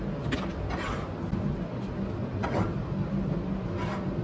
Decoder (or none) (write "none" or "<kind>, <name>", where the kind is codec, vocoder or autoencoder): none